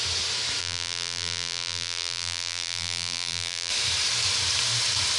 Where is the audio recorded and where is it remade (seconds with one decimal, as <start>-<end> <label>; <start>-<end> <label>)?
0.0-0.6 recorded; 0.6-3.7 remade; 3.7-5.2 recorded